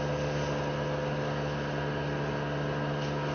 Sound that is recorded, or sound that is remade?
recorded